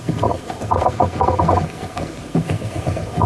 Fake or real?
fake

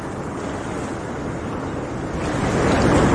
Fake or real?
real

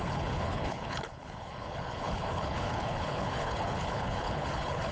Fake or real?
fake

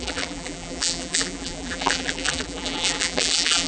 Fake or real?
fake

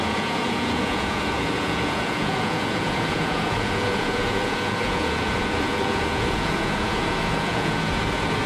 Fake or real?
fake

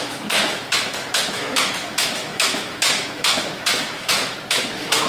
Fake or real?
fake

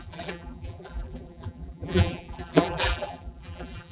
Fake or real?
fake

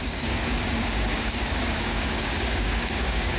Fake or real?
fake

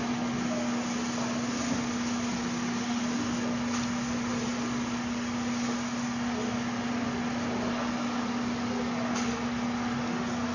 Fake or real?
real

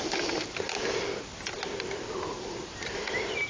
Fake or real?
real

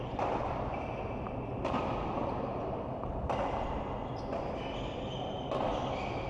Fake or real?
real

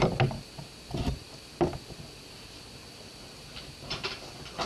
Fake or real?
real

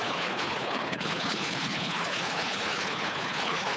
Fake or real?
fake